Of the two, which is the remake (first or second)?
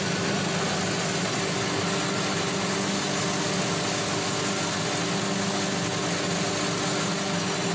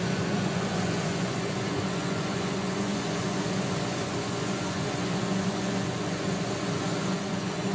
second